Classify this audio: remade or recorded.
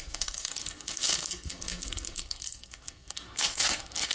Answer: remade